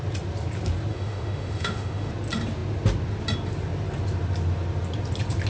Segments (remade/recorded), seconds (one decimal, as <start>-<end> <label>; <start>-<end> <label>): 0.0-0.9 recorded; 0.9-2.1 remade; 2.1-5.5 recorded